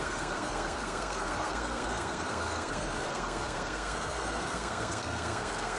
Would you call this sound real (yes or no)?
no